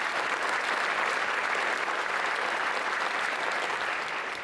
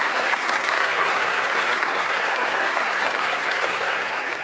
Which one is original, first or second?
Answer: first